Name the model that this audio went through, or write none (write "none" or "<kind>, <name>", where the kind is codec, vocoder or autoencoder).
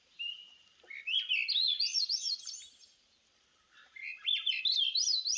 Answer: none